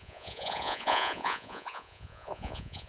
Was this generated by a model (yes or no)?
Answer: yes